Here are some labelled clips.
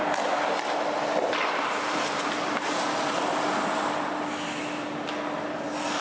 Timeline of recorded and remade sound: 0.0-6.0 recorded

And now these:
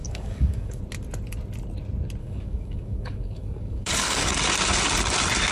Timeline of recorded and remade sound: 0.0-0.8 remade; 0.8-2.2 recorded; 2.2-4.3 remade; 4.3-5.5 recorded

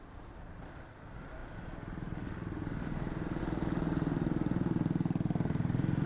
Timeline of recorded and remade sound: 0.0-6.1 recorded